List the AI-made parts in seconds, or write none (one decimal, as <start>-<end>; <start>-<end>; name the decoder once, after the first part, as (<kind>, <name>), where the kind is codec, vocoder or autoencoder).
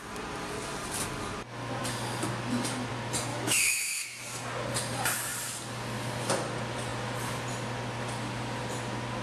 3.3-4.2 (autoencoder, DAC-VAE)